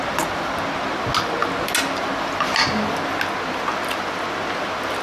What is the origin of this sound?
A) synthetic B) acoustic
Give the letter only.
B